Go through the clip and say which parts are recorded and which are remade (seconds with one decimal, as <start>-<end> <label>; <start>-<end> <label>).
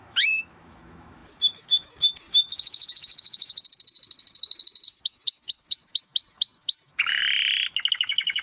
0.0-7.2 remade; 7.2-7.9 recorded; 7.9-8.4 remade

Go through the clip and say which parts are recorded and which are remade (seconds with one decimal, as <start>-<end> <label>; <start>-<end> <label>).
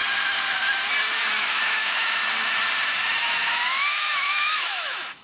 0.0-1.4 recorded; 1.4-2.2 remade; 2.2-3.2 recorded; 3.2-5.2 remade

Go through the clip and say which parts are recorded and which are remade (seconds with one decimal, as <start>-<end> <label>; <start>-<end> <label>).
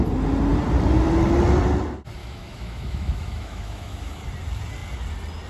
0.0-2.2 recorded; 2.2-4.2 remade; 4.2-5.5 recorded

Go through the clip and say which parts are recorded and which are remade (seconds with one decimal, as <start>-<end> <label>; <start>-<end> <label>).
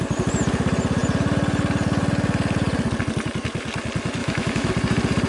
0.0-4.2 recorded; 4.2-4.7 remade; 4.7-5.3 recorded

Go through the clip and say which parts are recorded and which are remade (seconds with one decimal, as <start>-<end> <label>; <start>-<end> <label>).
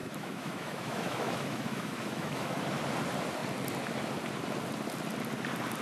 0.0-2.6 remade; 2.6-5.8 recorded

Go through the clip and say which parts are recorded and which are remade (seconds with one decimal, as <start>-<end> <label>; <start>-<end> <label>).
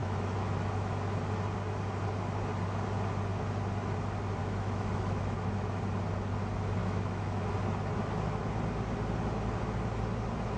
0.0-0.9 remade; 0.9-4.4 recorded; 4.4-5.8 remade; 5.8-6.8 recorded; 6.8-7.5 remade; 7.5-10.6 recorded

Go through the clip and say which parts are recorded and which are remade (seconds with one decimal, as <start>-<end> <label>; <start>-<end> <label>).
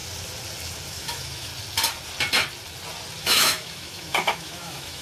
0.0-0.9 recorded; 0.9-1.5 remade; 1.5-3.2 recorded; 3.2-5.0 remade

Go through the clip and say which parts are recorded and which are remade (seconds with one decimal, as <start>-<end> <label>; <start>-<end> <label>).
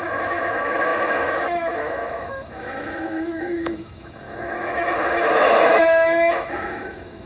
0.0-7.3 remade